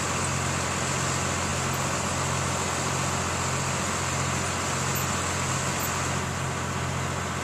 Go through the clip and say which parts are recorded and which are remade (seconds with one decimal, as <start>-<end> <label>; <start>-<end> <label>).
0.0-7.4 recorded